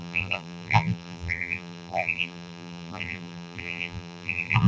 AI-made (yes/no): yes